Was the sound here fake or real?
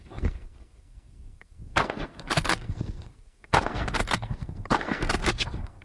fake